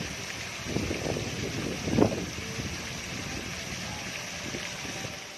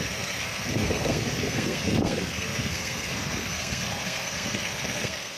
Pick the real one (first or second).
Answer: first